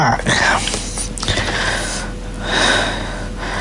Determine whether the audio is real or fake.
real